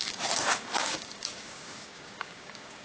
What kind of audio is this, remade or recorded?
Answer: remade